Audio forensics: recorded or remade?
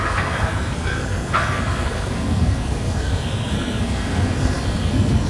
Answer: remade